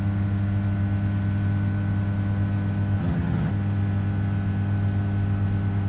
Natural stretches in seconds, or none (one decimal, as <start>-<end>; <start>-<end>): 0.0-3.0; 3.5-5.9